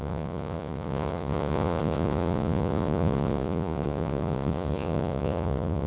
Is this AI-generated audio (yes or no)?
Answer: yes